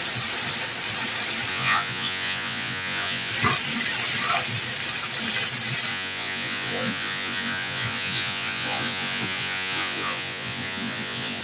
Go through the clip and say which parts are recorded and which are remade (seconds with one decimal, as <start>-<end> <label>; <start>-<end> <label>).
0.0-1.5 recorded; 1.5-3.3 remade; 3.3-5.9 recorded; 5.9-11.4 remade

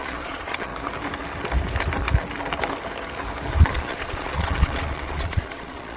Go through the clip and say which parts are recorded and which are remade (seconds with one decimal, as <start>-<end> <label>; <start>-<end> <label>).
0.0-0.7 remade; 0.7-3.6 recorded; 3.6-6.0 remade

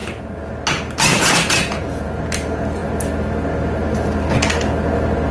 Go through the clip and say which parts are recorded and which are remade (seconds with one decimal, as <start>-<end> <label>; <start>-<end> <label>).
0.0-0.5 remade; 0.5-1.1 recorded; 1.1-2.1 remade; 2.1-5.3 recorded